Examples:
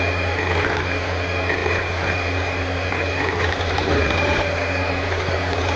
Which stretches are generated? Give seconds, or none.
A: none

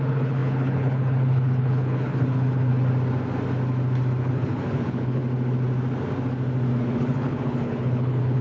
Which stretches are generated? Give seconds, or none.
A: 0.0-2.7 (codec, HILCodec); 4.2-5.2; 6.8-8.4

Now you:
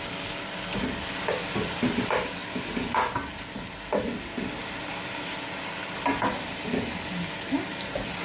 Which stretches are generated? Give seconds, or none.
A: none

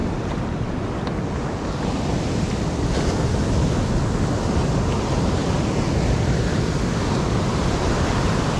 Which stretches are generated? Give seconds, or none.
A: none

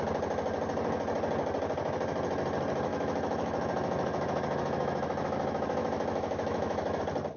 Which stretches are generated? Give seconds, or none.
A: 2.9-7.0 (autoencoder, DAC-VAE)

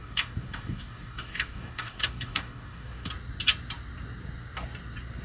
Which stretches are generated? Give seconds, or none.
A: 0.0-3.1 (codec, DAC)